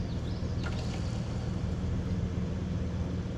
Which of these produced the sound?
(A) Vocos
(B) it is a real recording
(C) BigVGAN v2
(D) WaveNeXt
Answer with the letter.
B